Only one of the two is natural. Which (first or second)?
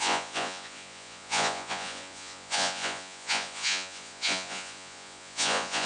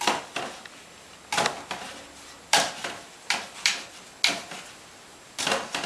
second